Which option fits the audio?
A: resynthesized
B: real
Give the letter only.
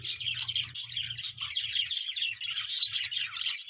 B